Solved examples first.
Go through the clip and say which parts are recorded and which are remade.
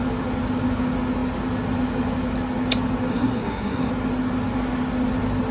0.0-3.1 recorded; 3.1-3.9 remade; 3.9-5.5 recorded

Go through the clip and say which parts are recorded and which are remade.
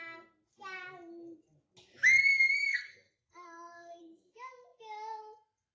0.0-2.7 recorded; 2.7-4.0 remade; 4.0-5.7 recorded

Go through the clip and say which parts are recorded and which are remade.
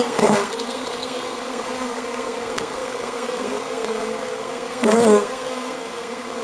0.0-6.4 remade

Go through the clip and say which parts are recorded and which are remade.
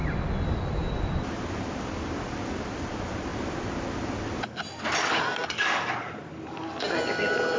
0.0-7.6 recorded